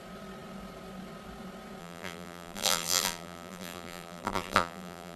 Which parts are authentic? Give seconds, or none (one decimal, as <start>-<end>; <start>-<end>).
0.0-1.8